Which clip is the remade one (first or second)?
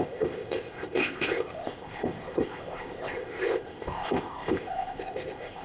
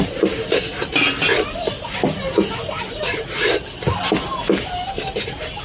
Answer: first